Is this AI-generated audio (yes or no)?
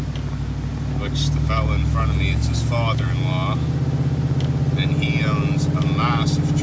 no